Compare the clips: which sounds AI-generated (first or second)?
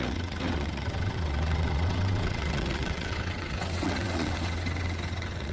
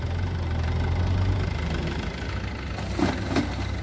first